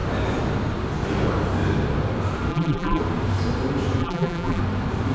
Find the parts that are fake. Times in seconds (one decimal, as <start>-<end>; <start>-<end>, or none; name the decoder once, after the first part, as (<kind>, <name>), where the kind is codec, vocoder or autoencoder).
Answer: 2.5-3.0 (vocoder, BigVGAN v2); 4.0-4.6